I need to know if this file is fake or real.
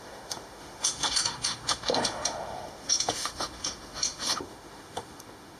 fake